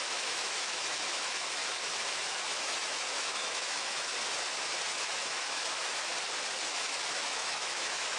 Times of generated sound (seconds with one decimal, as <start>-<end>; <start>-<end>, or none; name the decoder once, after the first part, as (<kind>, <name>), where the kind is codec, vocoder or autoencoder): 0.0-1.6 (autoencoder, DAC-VAE); 2.2-4.1; 4.9-6.1; 6.7-8.2